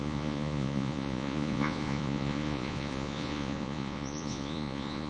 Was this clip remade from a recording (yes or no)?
yes